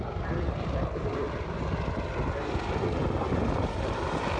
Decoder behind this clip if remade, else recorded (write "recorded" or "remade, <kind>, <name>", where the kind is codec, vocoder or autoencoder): recorded